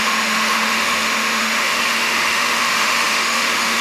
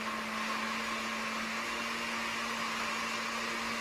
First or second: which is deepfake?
first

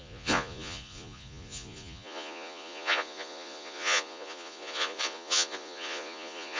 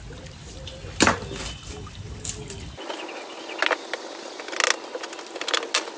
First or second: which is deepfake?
first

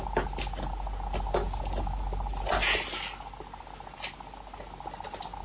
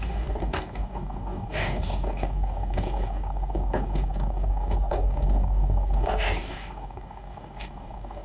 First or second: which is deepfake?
second